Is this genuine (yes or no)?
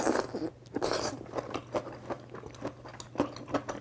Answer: yes